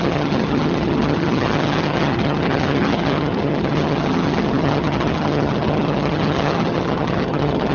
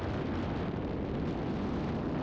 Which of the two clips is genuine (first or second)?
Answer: second